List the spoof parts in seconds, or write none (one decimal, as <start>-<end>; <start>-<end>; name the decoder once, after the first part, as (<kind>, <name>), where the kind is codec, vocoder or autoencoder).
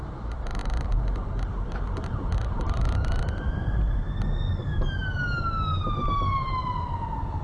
0.0-4.0 (vocoder, BigVGAN v2); 4.6-5.0; 5.7-7.4